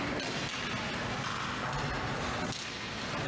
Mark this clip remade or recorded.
recorded